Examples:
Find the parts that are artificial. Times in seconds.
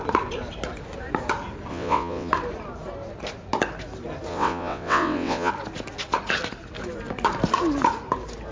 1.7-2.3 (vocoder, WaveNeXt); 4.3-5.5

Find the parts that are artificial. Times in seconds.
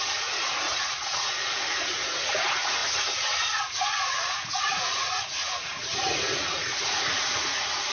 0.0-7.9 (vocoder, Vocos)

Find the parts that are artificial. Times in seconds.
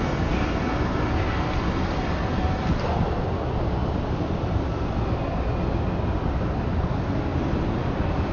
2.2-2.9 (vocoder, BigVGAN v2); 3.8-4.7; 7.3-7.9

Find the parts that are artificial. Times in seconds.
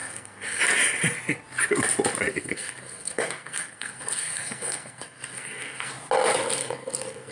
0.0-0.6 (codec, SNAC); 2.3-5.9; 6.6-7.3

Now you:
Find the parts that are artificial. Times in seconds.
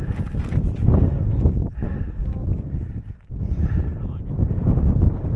none